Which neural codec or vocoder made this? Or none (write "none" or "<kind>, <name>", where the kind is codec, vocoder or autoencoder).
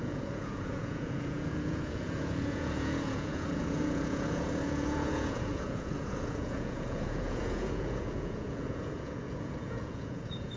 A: vocoder, Vocos